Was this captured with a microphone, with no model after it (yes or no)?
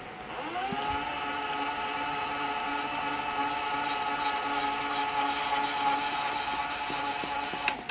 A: yes